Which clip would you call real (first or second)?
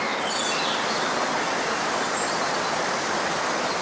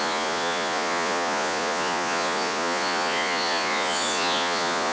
first